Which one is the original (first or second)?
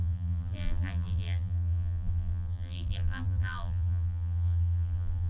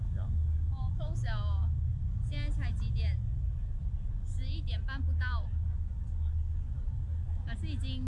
second